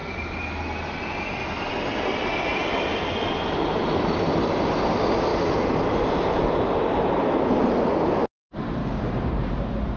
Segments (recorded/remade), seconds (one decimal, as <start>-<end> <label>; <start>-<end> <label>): 0.0-8.8 recorded; 8.8-9.5 remade; 9.5-10.0 recorded